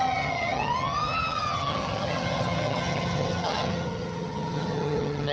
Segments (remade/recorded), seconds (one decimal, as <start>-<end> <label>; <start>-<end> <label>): 0.0-5.3 remade